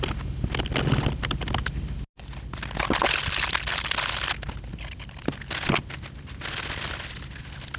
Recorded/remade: recorded